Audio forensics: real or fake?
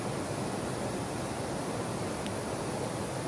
real